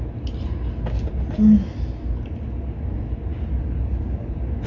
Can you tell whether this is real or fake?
real